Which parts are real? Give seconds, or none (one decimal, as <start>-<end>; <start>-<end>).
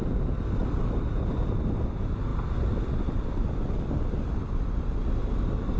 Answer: 0.0-5.8